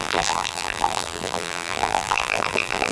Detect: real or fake fake